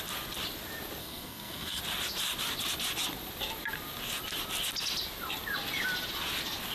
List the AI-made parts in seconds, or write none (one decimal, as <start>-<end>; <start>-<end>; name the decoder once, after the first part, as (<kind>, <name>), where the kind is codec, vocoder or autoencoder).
1.0-1.8 (codec, SNAC)